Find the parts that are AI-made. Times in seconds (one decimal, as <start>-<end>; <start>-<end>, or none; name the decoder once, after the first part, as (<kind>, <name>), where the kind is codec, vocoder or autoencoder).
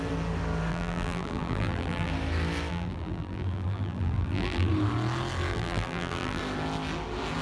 0.7-2.1 (vocoder, BigVGAN v2); 2.7-4.7; 5.5-6.4